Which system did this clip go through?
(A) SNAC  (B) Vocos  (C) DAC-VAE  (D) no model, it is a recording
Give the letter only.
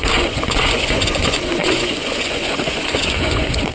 B